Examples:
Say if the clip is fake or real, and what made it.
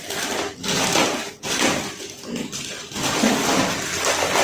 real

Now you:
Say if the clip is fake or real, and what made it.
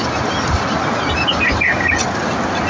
real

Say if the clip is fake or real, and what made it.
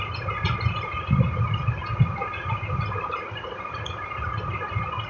real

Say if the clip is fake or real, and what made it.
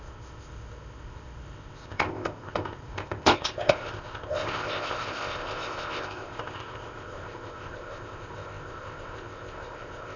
fake, codec, ZipCodec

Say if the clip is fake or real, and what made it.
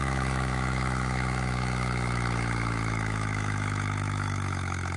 fake, autoencoder, DAC-VAE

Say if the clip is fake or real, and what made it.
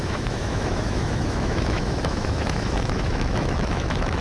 fake, autoencoder, DAC-VAE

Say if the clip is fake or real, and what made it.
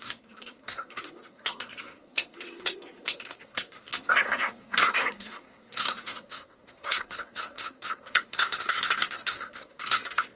fake, codec, SNAC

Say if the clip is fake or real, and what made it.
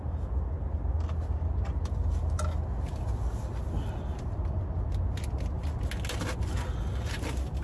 real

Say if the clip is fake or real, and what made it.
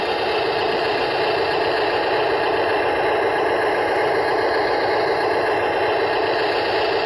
real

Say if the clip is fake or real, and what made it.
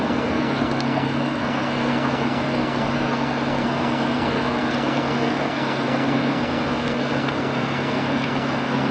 fake, codec, SNAC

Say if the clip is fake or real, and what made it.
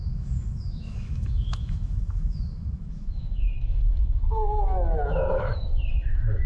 fake, autoencoder, DAC-VAE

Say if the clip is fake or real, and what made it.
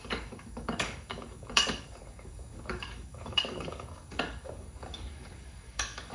fake, codec, DAC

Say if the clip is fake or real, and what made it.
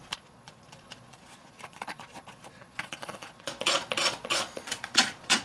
fake, vocoder, Vocos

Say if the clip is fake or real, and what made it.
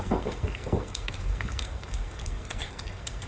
fake, codec, SNAC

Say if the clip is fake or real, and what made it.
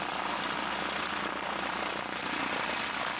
real